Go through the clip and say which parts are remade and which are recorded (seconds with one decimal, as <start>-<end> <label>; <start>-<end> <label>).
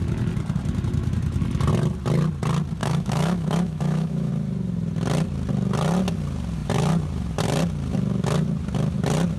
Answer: 0.0-2.8 recorded; 2.8-4.3 remade; 4.3-9.4 recorded